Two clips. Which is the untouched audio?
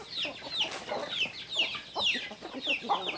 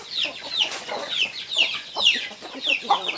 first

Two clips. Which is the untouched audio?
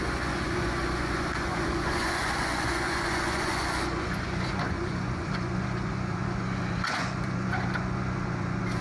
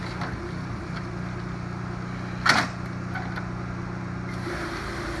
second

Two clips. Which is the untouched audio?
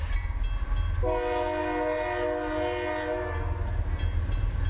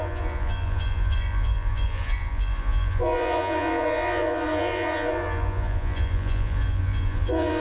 first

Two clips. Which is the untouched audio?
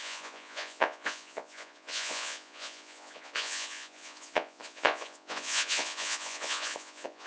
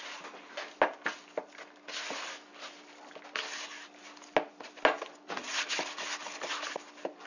second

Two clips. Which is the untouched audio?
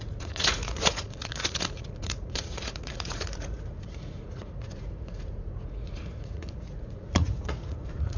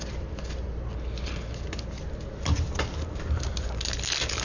second